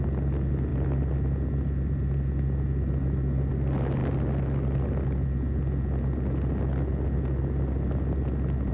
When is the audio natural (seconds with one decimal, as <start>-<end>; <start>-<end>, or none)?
0.0-8.7